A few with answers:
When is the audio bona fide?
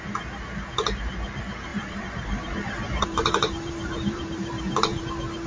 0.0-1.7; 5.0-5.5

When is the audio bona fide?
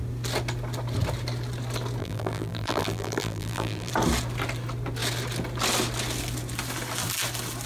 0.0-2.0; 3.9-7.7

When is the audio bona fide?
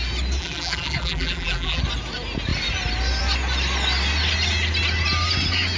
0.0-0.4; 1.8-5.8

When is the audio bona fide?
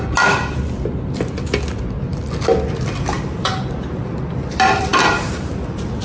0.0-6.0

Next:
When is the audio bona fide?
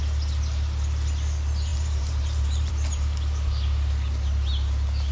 0.0-1.7; 2.7-5.1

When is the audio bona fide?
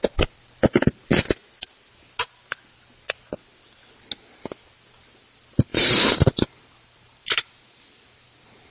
0.0-5.7